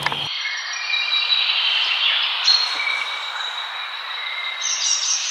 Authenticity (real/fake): real